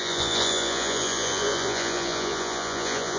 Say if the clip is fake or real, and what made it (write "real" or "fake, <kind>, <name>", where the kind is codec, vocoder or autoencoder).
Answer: fake, vocoder, Vocos